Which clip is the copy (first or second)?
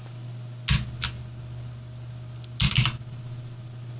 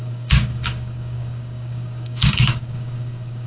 second